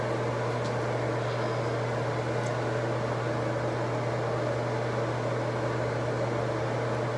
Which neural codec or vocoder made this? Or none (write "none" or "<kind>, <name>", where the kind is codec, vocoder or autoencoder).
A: none